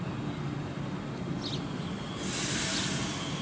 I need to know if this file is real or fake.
real